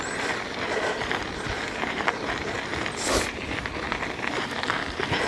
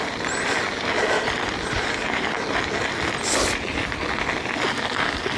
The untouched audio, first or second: second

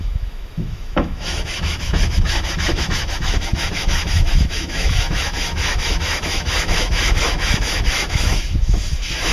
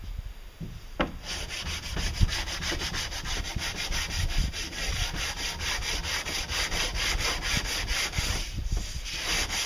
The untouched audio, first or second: second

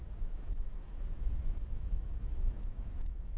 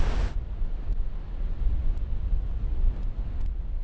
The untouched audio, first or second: second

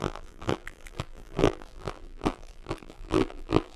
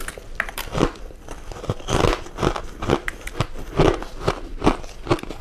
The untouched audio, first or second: second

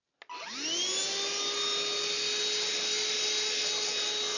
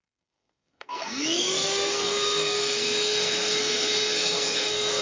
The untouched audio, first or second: first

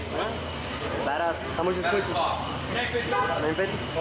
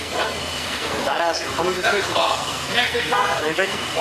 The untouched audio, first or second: first